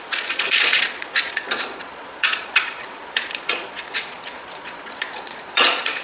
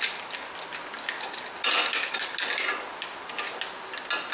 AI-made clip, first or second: first